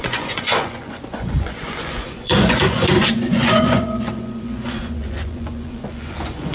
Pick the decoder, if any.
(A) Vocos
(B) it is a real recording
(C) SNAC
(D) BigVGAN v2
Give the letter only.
A